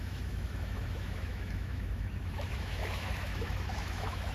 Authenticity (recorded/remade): remade